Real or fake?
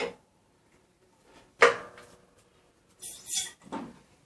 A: real